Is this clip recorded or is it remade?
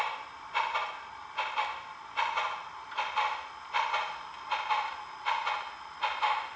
recorded